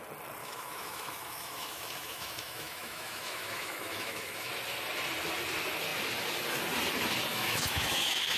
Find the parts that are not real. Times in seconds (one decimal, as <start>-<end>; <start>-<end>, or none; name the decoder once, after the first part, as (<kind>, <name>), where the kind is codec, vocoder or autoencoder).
0.4-4.5 (autoencoder, DAC-VAE); 7.3-8.4